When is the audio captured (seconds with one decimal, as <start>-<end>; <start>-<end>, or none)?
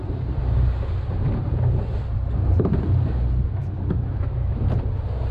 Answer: 0.0-3.6; 4.6-5.3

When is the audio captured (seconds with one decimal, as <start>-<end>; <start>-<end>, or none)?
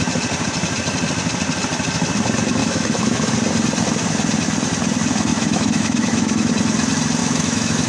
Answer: 0.0-2.6; 3.3-5.3; 6.5-7.2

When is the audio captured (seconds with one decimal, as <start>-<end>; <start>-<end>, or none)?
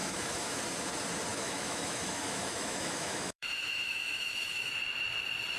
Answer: 0.6-1.3; 4.7-5.6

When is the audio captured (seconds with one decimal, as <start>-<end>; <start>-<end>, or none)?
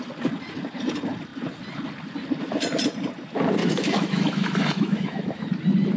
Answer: 0.0-3.6; 5.5-6.0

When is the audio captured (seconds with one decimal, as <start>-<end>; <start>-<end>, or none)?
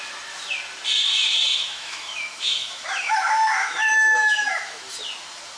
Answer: 0.0-1.5; 4.9-5.6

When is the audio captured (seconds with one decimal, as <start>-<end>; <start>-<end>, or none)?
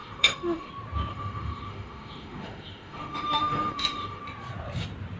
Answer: 0.7-1.1; 4.2-5.2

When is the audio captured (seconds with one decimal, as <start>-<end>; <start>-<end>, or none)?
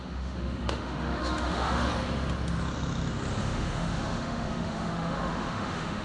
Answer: 1.9-3.4